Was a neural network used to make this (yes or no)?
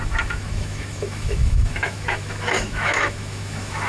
yes